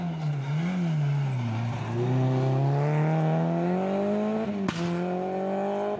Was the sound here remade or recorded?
recorded